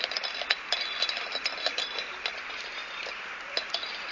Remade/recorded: recorded